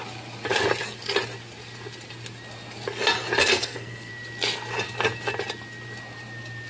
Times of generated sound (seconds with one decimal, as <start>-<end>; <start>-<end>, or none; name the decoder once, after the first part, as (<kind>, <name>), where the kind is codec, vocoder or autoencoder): 3.4-4.1 (codec, SNAC)